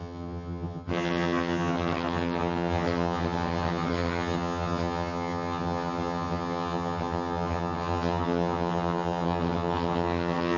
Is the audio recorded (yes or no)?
no